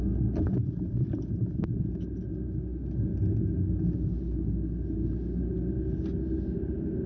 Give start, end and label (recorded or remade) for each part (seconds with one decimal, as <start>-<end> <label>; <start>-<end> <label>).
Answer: 0.0-7.1 recorded

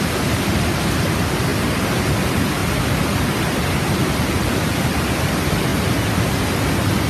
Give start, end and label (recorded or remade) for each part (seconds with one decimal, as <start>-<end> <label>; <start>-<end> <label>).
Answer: 0.0-7.1 recorded

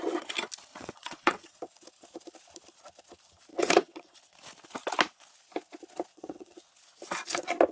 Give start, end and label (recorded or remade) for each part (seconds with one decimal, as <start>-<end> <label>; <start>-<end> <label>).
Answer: 0.0-0.7 recorded; 0.7-1.6 remade; 1.6-3.5 recorded; 3.5-4.2 remade; 4.2-6.1 recorded; 6.1-6.7 remade; 6.7-7.7 recorded

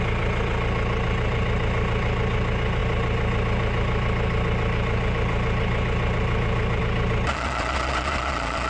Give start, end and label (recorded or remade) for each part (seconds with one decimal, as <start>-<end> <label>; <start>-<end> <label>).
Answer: 0.0-7.3 recorded; 7.3-8.7 remade

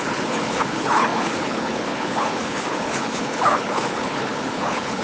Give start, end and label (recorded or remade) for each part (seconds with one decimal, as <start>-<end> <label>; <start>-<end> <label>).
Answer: 0.0-5.0 remade

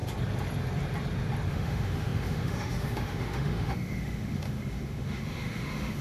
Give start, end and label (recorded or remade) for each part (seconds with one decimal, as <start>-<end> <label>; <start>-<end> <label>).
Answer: 0.0-1.5 recorded; 1.5-6.0 remade

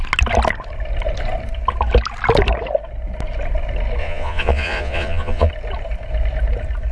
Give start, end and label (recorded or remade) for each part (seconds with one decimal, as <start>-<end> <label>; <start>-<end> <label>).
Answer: 0.0-4.0 recorded; 4.0-5.5 remade; 5.5-6.9 recorded

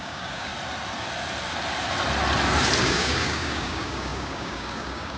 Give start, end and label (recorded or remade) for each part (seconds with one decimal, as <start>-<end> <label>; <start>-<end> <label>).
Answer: 0.0-0.5 remade; 0.5-2.8 recorded; 2.8-5.2 remade